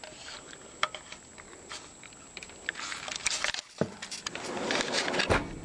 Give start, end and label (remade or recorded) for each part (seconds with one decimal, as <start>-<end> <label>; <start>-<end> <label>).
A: 0.0-5.6 recorded